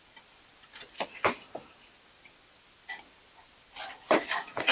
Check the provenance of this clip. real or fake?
real